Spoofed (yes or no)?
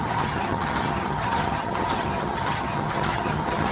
yes